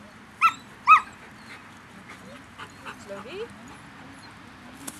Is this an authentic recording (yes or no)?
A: yes